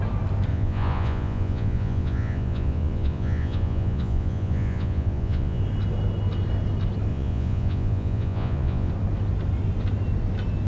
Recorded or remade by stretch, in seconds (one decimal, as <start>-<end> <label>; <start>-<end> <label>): 0.0-0.5 recorded; 0.5-5.6 remade; 5.6-7.1 recorded; 7.1-8.9 remade; 8.9-10.7 recorded